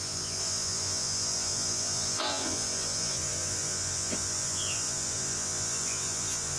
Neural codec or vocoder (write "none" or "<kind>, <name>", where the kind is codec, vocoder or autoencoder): vocoder, Vocos